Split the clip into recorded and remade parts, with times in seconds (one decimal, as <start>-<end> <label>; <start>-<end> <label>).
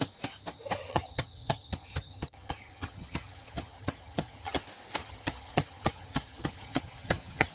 0.0-0.8 recorded; 0.8-4.6 remade; 4.6-5.0 recorded; 5.0-7.5 remade